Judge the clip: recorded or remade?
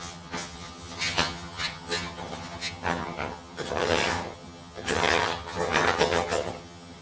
remade